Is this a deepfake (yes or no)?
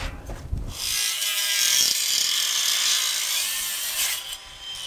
yes